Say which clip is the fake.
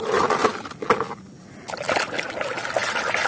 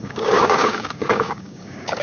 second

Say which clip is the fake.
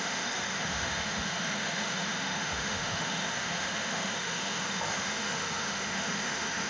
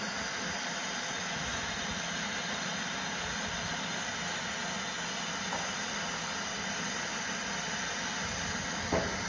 first